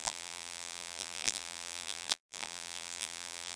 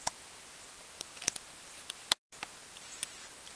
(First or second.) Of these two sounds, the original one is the second